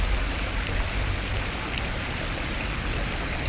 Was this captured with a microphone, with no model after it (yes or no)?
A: no